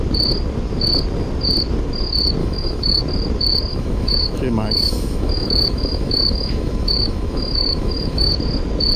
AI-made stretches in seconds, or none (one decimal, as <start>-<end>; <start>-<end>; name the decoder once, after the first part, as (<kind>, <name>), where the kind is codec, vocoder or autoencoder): 2.4-3.0 (autoencoder, DAC-VAE); 3.7-8.3